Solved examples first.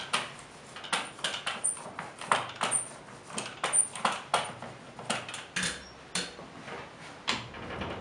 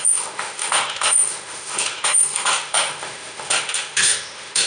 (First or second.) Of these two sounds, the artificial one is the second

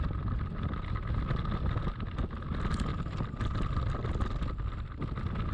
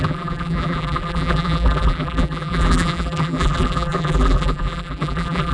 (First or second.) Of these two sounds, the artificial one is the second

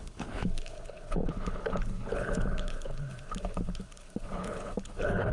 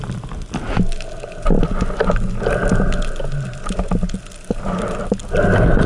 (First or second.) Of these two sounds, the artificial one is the first